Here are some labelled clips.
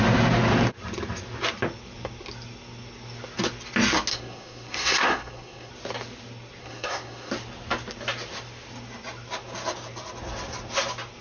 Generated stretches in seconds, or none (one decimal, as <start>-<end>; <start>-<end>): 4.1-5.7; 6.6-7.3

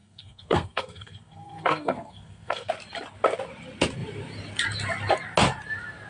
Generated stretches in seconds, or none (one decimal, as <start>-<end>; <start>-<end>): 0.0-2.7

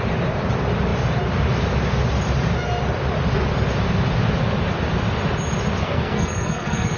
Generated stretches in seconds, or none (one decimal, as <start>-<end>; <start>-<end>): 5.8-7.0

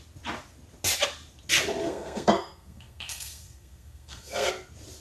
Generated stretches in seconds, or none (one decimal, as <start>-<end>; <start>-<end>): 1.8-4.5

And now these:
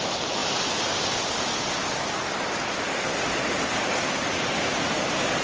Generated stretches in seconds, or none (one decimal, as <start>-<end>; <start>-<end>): none

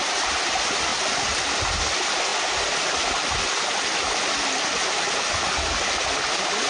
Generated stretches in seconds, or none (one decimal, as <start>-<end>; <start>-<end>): none